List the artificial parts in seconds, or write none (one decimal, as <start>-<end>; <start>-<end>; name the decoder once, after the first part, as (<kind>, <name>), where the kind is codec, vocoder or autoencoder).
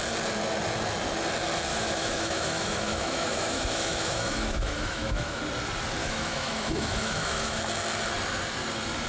1.7-5.4 (autoencoder, DAC-VAE); 6.0-7.6